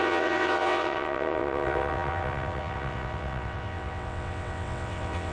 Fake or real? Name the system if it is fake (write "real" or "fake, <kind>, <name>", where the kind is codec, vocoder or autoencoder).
fake, vocoder, WaveNeXt